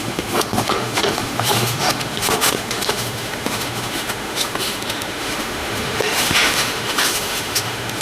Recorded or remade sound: remade